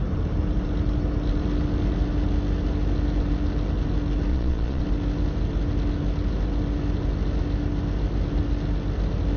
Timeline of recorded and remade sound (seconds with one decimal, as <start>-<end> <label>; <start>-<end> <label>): 0.0-4.3 recorded; 4.3-4.8 remade; 4.8-9.4 recorded